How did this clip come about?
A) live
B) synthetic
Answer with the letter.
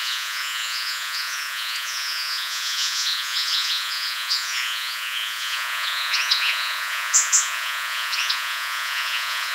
B